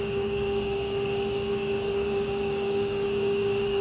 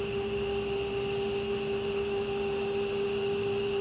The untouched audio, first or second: second